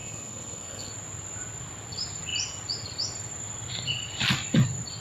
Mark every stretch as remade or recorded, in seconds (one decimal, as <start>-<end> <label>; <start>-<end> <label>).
0.0-0.9 remade; 0.9-5.0 recorded